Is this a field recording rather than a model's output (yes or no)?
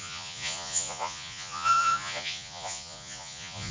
no